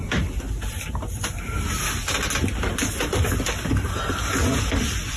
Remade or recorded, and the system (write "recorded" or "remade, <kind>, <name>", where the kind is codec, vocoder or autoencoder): recorded